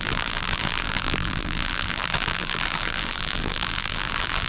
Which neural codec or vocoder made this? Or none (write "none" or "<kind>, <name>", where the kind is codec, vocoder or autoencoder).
vocoder, BigVGAN v2